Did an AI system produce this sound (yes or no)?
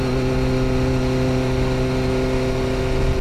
no